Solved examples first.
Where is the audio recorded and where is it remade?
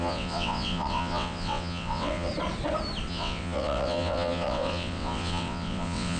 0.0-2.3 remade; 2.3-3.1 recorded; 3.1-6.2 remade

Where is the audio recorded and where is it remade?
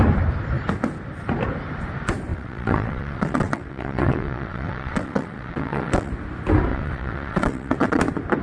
0.0-2.3 recorded; 2.3-6.1 remade; 6.1-6.7 recorded; 6.7-8.0 remade; 8.0-8.4 recorded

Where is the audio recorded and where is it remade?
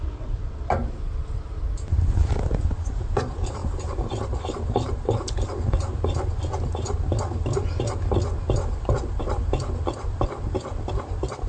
0.0-0.7 remade; 0.7-11.5 recorded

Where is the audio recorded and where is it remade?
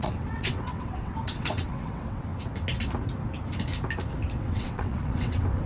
0.0-2.3 remade; 2.3-4.4 recorded; 4.4-5.7 remade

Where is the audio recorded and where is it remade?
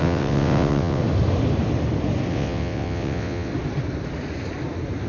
0.0-1.0 remade; 1.0-2.3 recorded; 2.3-3.5 remade; 3.5-5.1 recorded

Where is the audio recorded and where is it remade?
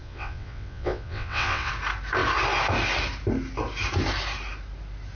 0.0-1.7 remade; 1.7-5.2 recorded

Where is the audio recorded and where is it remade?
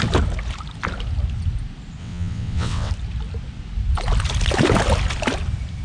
0.0-2.0 recorded; 2.0-2.9 remade; 2.9-5.8 recorded